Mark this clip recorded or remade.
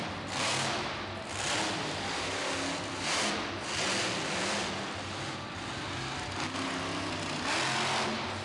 recorded